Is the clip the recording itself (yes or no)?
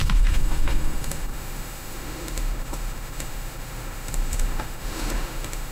no